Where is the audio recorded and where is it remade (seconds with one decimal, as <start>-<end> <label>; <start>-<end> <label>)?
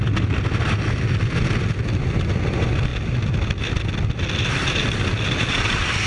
0.0-6.1 recorded